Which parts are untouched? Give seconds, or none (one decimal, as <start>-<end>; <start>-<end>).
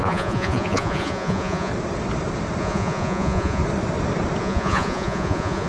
1.7-2.6; 3.6-4.4